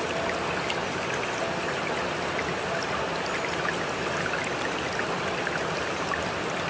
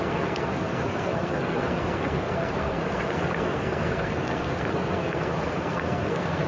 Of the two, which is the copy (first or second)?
second